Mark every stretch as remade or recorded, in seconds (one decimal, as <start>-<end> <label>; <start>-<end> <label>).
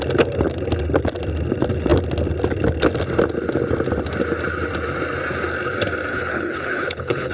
0.0-6.1 recorded; 6.1-7.3 remade